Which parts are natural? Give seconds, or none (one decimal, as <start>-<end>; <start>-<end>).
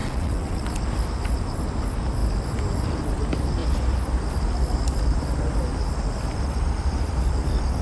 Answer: 0.7-7.8